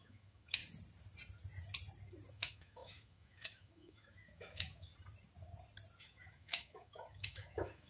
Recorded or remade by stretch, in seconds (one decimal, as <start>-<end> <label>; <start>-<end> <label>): 0.0-0.6 remade; 0.6-2.3 recorded; 2.3-4.9 remade; 4.9-6.0 recorded; 6.0-7.9 remade